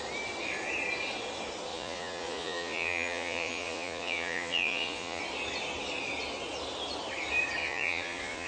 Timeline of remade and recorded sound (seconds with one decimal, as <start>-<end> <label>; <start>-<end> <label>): 0.0-1.7 recorded; 1.7-5.2 remade; 5.2-7.6 recorded; 7.6-8.5 remade